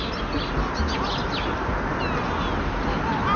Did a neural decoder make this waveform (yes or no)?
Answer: no